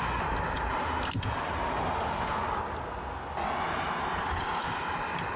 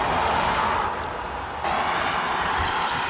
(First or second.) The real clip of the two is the first